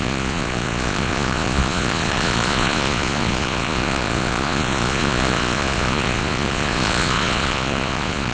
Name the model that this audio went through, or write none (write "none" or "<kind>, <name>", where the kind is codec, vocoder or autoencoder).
vocoder, Vocos